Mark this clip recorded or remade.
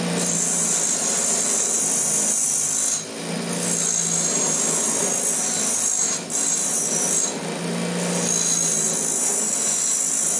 recorded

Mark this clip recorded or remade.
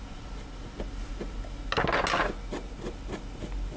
recorded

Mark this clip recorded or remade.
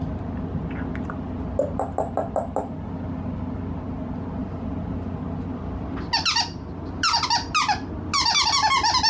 recorded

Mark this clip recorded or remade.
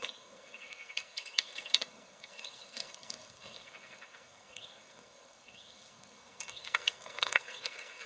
remade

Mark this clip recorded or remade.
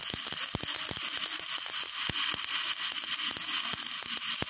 recorded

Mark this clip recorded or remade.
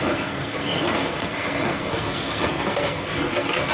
remade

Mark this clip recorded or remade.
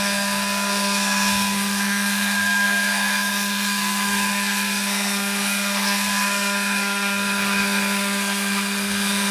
remade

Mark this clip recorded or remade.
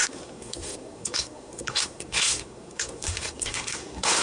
remade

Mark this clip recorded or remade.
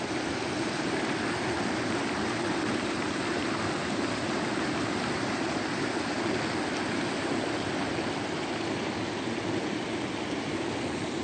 recorded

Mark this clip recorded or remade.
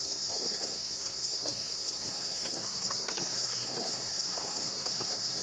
remade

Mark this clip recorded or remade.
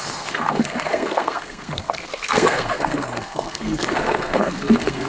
remade